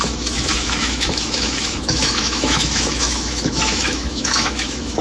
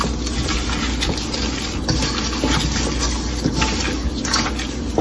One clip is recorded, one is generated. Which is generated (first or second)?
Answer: first